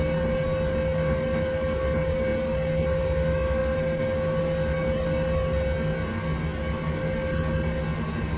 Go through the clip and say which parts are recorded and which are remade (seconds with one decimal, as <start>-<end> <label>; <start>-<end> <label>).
0.0-8.4 recorded